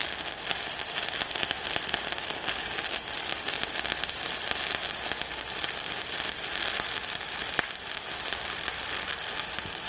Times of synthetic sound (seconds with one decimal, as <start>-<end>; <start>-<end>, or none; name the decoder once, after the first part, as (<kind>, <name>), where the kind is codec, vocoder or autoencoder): none